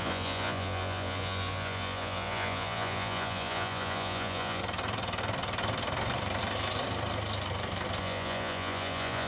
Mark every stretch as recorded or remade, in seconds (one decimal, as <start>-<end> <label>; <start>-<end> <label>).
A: 0.0-4.6 remade; 4.6-8.0 recorded; 8.0-9.3 remade